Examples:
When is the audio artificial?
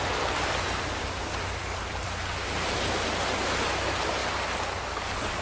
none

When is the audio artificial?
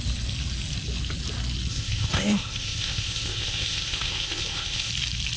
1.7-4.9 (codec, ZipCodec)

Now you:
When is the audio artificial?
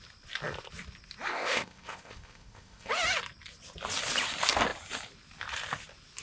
1.3-2.9 (codec, ZipCodec)